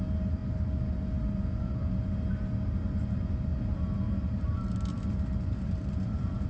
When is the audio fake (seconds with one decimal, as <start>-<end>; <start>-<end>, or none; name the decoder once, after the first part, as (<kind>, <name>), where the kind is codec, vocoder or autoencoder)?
0.0-0.4 (vocoder, BigVGAN v2); 3.7-6.5